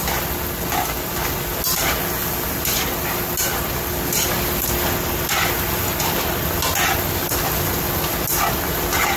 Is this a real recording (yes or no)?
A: yes